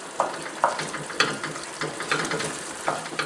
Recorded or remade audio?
remade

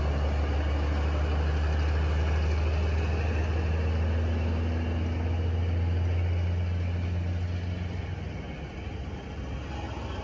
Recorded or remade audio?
recorded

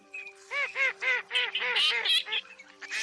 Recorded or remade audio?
recorded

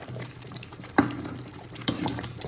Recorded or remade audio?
remade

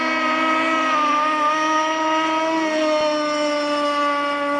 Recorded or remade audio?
recorded